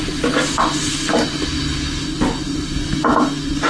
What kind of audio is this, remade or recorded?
recorded